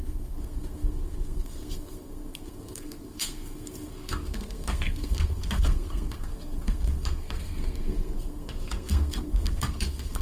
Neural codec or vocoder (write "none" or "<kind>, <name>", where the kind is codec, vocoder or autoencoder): codec, SNAC